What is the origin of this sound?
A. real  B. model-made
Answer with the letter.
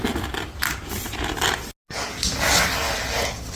A